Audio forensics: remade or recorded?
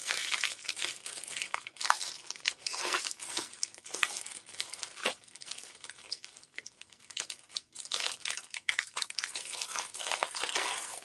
remade